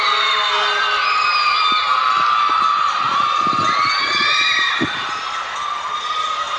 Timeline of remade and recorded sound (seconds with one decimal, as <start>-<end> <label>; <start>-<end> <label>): 0.0-6.6 recorded